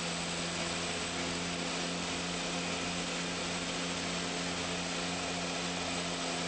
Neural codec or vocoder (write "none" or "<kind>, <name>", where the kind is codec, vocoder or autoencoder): none